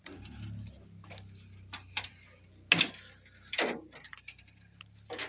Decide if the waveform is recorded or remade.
recorded